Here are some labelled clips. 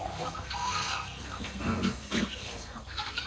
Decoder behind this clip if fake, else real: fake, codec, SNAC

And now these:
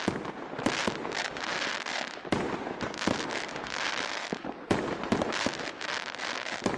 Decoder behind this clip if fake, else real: real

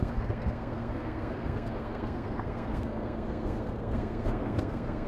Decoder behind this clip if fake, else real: fake, codec, SNAC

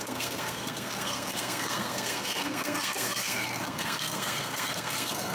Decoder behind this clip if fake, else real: fake, codec, SNAC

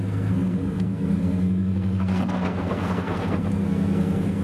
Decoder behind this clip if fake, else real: fake, codec, SNAC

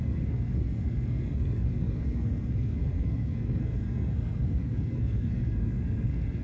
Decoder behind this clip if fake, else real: fake, codec, SNAC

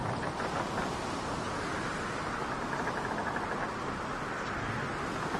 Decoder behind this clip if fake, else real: real